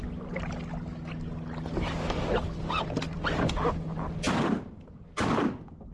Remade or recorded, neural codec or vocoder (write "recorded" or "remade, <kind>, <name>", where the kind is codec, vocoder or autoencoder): recorded